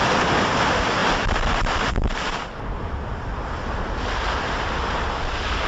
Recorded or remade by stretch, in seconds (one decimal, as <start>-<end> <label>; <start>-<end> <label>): 0.0-5.7 recorded